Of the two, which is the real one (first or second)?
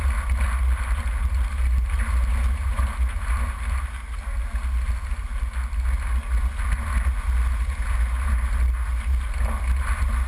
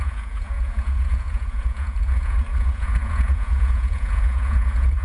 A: first